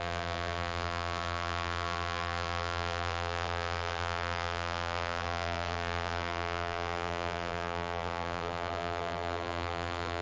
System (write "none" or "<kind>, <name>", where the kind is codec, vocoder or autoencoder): vocoder, BigVGAN v2